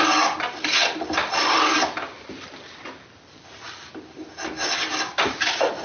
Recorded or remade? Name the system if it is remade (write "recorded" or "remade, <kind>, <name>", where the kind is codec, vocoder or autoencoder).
recorded